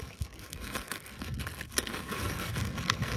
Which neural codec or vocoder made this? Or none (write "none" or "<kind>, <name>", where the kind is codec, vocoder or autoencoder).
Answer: codec, SNAC